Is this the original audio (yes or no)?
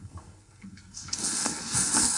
no